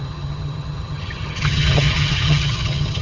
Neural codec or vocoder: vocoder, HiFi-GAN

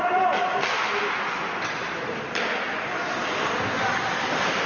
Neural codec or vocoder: none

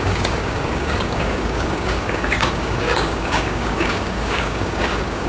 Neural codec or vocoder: codec, DAC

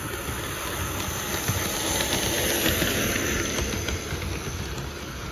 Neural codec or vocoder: none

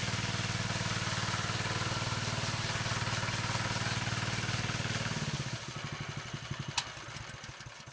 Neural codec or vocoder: none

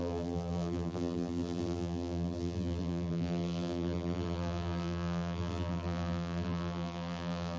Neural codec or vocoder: vocoder, BigVGAN v2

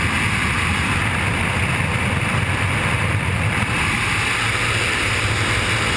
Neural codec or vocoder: none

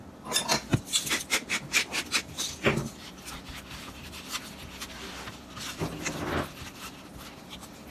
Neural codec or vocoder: none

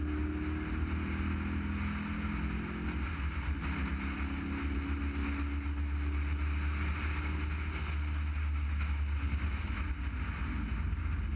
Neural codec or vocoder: none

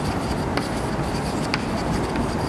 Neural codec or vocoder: none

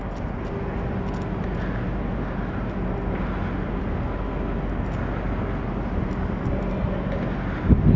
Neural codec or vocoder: none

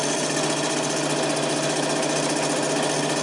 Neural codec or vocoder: none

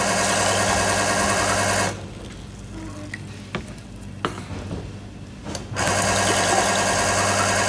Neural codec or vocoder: none